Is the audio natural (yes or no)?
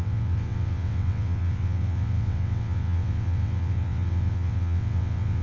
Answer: no